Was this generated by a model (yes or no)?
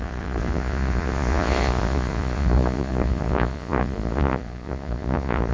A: yes